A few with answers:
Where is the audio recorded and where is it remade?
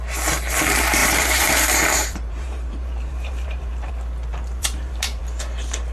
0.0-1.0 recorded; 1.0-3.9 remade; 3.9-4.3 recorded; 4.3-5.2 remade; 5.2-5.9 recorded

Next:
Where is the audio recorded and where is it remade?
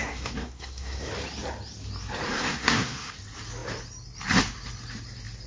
0.0-1.1 remade; 1.1-2.3 recorded; 2.3-3.1 remade; 3.1-5.5 recorded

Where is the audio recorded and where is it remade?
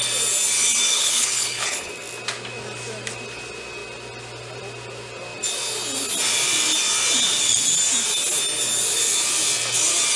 0.0-0.9 recorded; 0.9-1.9 remade; 1.9-10.2 recorded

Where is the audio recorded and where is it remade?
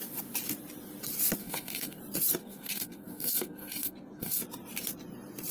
0.0-1.4 recorded; 1.4-2.0 remade; 2.0-2.4 recorded; 2.4-4.4 remade; 4.4-5.5 recorded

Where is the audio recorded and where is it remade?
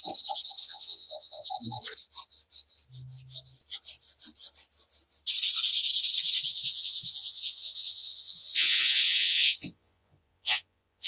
0.0-0.6 recorded; 0.6-1.5 remade; 1.5-6.5 recorded; 6.5-11.1 remade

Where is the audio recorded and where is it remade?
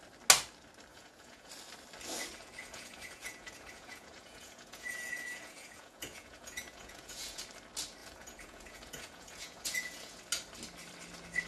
0.0-0.9 recorded; 0.9-1.5 remade; 1.5-2.6 recorded; 2.6-7.4 remade; 7.4-8.0 recorded; 8.0-10.2 remade; 10.2-11.5 recorded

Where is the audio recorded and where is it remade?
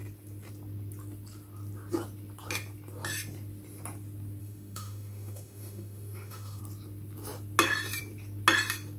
0.0-4.4 recorded; 4.4-6.6 remade; 6.6-9.0 recorded